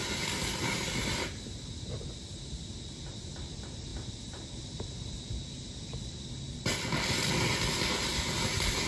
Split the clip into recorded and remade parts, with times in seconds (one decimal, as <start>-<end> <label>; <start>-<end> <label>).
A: 0.0-8.9 recorded